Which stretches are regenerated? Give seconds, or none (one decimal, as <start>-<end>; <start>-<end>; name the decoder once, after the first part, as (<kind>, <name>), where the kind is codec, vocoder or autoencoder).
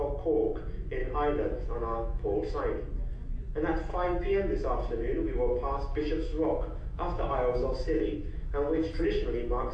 1.0-2.6 (autoencoder, DAC-VAE); 3.9-9.0